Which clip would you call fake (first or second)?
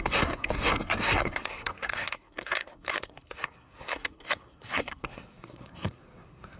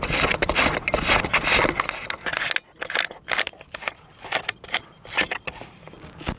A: first